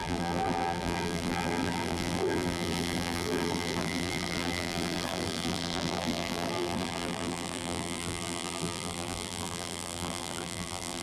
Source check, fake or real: fake